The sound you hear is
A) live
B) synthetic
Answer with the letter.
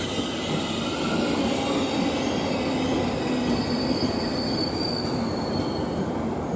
A